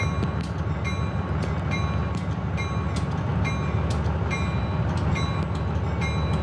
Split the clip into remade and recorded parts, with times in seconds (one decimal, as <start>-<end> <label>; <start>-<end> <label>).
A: 0.0-6.4 recorded